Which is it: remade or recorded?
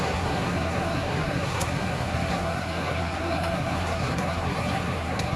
remade